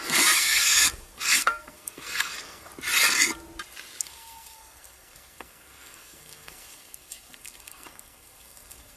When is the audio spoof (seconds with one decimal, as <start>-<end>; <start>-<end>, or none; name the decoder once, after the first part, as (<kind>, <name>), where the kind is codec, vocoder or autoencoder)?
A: 0.0-2.7 (codec, SNAC); 4.0-9.0